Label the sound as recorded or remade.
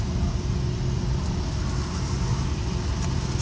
recorded